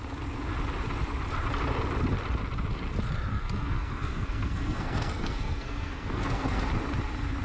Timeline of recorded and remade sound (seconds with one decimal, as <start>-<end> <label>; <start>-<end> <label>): 0.0-3.3 recorded; 3.3-6.7 remade; 6.7-7.4 recorded